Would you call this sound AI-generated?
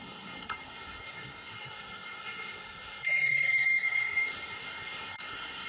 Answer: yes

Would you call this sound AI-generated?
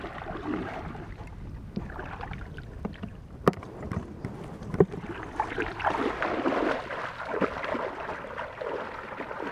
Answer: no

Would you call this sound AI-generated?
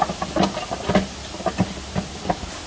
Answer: no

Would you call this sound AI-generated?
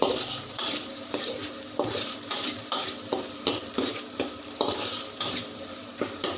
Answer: yes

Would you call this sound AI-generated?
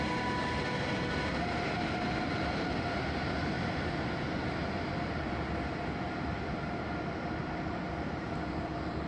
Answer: no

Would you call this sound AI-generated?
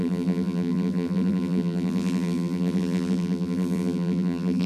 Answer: yes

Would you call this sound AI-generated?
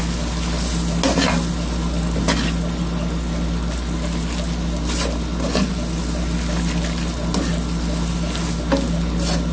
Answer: no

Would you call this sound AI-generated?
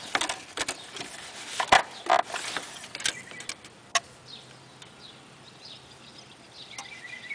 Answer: no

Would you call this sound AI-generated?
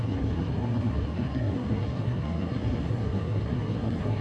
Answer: yes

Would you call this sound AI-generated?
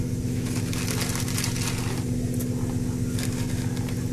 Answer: no